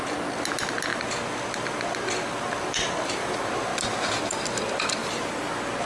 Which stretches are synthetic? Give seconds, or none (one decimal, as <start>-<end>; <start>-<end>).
5.0-5.5